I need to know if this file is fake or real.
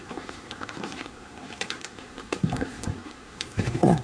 fake